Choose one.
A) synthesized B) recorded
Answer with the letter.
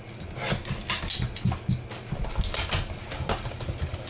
B